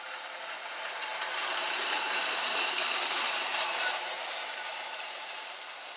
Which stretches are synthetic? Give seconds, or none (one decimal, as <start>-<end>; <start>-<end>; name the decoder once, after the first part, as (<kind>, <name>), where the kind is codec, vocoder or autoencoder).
0.0-6.0 (vocoder, BigVGAN v2)